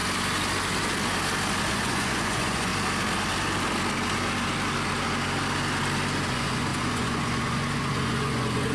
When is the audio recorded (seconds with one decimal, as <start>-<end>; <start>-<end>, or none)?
0.0-1.7; 2.7-6.3